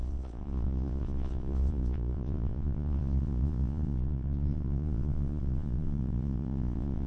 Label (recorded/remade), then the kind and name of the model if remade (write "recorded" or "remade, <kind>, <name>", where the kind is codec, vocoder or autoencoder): remade, vocoder, Vocos